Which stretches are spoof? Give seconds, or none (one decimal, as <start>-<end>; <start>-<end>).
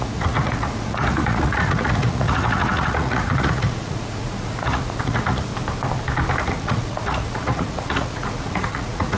0.0-5.5; 6.4-9.2